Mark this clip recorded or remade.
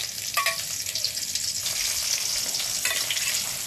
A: recorded